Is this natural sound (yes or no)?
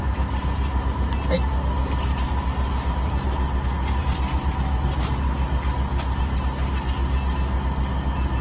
yes